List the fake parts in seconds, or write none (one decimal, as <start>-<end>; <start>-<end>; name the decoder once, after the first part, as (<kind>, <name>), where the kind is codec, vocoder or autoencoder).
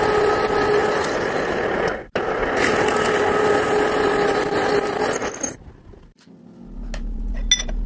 none